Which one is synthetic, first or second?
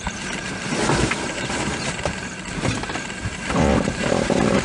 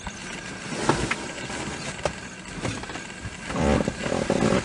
first